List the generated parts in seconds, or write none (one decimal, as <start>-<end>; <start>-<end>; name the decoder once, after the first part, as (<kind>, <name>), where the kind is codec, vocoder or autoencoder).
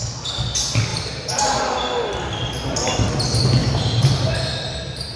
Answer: 0.9-1.6 (vocoder, BigVGAN v2); 3.6-4.3